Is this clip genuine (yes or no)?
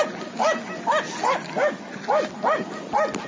yes